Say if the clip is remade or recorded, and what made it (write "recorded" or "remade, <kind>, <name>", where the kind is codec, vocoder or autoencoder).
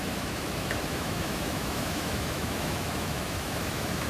remade, autoencoder, DAC-VAE